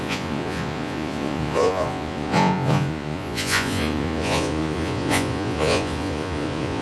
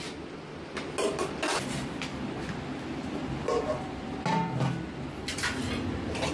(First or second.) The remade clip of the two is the first